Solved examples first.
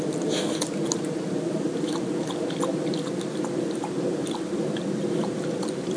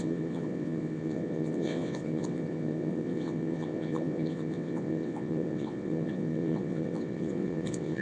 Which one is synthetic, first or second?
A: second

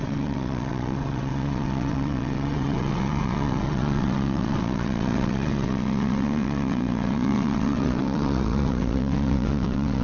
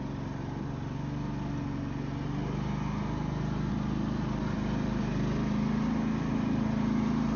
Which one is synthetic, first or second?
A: first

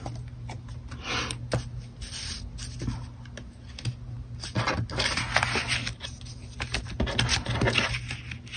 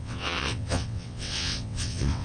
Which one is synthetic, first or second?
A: second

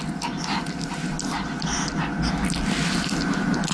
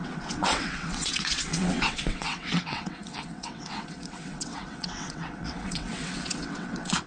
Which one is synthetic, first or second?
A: second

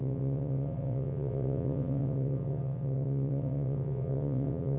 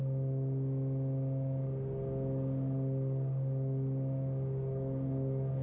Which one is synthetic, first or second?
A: first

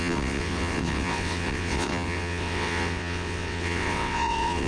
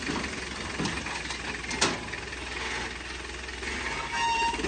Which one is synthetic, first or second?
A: first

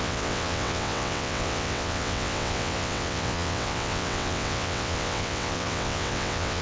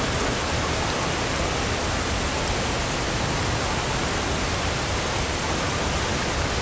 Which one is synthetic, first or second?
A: first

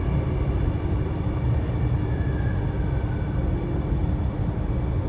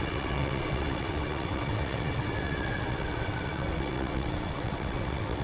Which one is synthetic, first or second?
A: second